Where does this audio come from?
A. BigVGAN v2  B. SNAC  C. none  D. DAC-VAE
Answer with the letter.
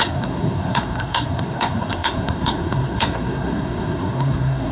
B